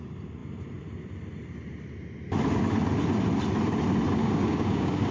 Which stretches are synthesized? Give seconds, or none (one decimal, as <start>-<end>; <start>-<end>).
4.2-5.1